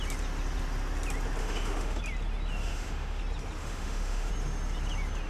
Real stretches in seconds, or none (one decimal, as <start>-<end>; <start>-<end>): 0.0-1.4; 2.0-2.6; 3.2-3.6; 4.3-5.3